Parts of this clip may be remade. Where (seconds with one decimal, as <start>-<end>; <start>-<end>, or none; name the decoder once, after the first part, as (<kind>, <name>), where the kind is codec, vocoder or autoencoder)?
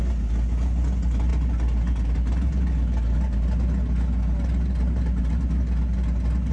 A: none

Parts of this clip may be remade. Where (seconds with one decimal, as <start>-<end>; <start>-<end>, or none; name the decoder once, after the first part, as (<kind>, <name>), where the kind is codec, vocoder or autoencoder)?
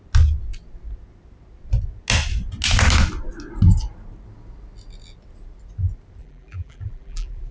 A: 6.2-7.5 (vocoder, BigVGAN v2)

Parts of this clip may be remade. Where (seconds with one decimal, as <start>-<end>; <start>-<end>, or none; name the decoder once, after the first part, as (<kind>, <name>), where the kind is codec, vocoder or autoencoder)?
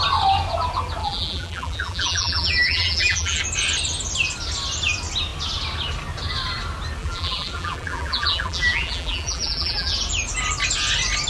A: 1.0-3.4 (vocoder, BigVGAN v2); 7.0-9.9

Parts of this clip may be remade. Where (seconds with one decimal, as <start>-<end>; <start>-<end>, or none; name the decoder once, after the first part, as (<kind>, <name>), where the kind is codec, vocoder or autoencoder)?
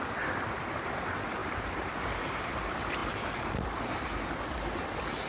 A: 1.4-2.5 (vocoder, BigVGAN v2)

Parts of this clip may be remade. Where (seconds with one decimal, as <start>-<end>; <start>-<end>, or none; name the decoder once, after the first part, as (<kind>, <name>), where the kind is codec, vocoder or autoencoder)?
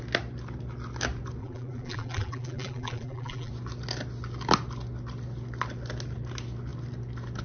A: 1.4-3.5 (vocoder, BigVGAN v2)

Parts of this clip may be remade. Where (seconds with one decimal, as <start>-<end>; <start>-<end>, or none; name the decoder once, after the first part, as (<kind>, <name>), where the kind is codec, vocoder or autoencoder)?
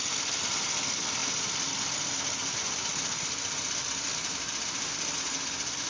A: none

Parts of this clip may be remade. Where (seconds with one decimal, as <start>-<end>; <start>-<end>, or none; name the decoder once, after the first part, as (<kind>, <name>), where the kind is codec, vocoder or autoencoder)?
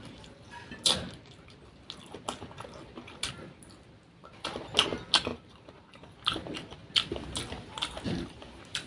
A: 5.3-6.1 (vocoder, BigVGAN v2)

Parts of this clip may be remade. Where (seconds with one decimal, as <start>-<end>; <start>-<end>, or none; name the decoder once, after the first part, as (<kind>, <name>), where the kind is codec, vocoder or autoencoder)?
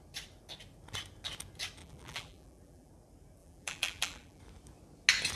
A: 1.8-2.9 (vocoder, BigVGAN v2); 3.4-4.4